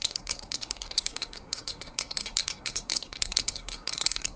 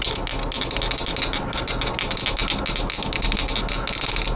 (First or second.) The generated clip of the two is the first